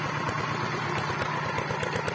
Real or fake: real